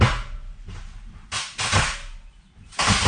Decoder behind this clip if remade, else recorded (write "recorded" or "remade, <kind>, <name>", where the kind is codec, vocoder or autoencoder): recorded